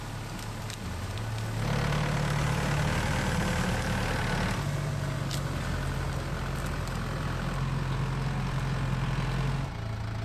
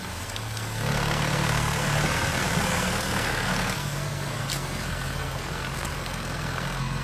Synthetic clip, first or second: second